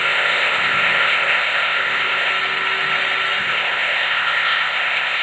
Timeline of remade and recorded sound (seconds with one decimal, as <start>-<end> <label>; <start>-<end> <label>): 0.0-2.3 remade; 2.3-3.4 recorded; 3.4-5.2 remade